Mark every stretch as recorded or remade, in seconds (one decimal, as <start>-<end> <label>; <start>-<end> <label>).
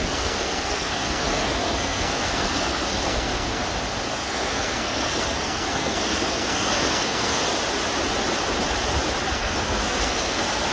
0.0-3.6 remade; 3.6-4.1 recorded; 4.1-7.4 remade; 7.4-9.2 recorded; 9.2-10.7 remade